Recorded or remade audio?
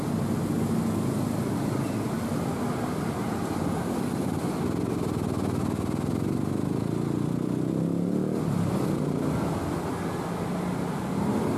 recorded